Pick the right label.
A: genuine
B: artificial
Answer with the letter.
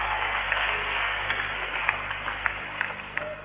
B